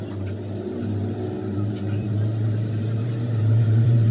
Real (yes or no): no